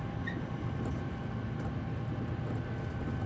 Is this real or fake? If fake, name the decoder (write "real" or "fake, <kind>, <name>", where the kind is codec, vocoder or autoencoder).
real